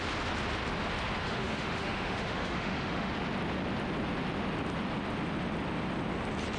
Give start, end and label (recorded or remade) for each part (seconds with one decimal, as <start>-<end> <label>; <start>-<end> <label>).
0.0-1.2 recorded; 1.2-3.1 remade; 3.1-6.6 recorded